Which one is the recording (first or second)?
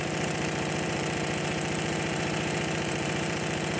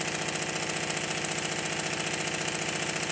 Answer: second